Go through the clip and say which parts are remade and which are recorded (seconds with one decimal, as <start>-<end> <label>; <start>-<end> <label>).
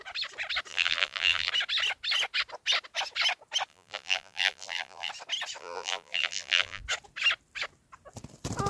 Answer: 0.0-0.7 recorded; 0.7-1.5 remade; 1.5-3.7 recorded; 3.7-5.1 remade; 5.1-5.6 recorded; 5.6-6.8 remade; 6.8-8.7 recorded